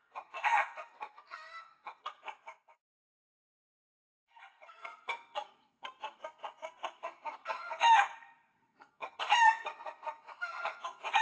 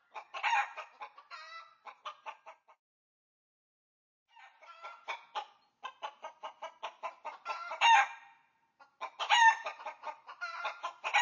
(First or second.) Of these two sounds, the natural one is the second